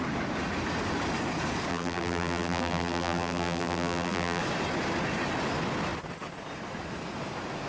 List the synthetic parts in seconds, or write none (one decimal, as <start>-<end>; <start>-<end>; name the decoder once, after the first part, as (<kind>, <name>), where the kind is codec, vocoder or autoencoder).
1.7-4.4 (vocoder, BigVGAN v2)